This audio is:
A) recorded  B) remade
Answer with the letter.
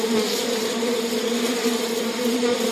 B